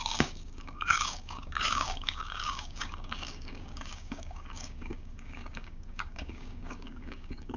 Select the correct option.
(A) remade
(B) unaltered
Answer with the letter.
A